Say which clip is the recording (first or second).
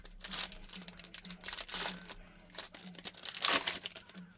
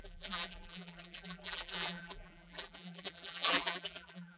first